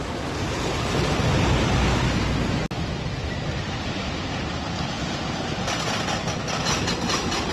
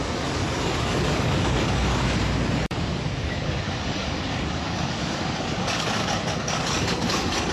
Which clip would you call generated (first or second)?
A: second